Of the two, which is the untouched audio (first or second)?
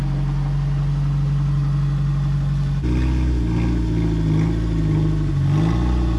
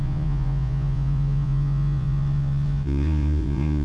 first